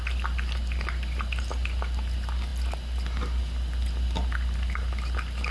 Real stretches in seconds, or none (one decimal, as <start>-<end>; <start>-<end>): 2.5-5.5